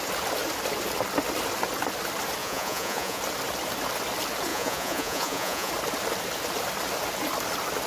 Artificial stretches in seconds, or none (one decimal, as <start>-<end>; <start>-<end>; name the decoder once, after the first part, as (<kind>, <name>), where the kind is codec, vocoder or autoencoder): 2.4-3.2 (vocoder, Vocos); 4.5-5.7